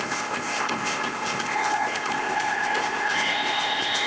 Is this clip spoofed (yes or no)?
yes